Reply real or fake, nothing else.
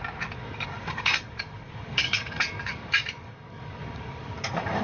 fake